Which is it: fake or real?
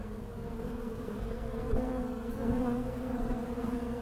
fake